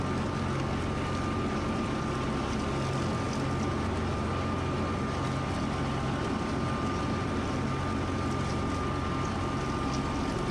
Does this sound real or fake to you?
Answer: real